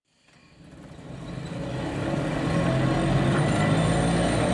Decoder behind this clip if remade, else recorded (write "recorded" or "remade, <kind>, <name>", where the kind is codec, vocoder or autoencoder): recorded